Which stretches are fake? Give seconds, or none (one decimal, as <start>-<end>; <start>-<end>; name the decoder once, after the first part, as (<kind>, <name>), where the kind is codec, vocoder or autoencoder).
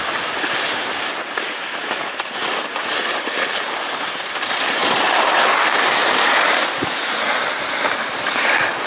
none